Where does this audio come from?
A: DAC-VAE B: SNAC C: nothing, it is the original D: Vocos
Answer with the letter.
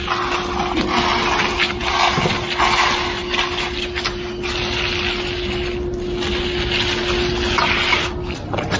C